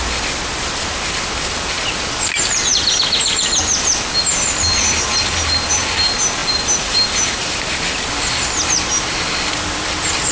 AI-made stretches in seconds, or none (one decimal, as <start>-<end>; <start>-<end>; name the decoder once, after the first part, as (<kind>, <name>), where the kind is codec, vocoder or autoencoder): none